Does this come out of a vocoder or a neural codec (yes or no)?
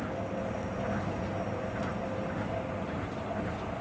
no